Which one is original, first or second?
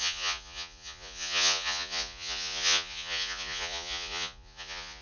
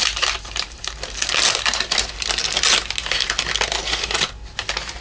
second